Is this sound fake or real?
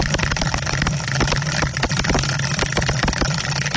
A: real